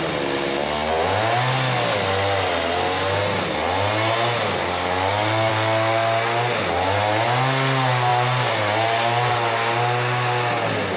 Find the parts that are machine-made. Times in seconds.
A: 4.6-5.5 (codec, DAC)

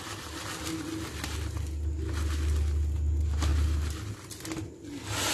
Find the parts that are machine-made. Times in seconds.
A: none

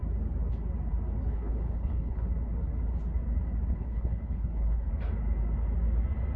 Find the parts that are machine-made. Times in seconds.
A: 1.3-2.3 (codec, HILCodec); 3.7-4.9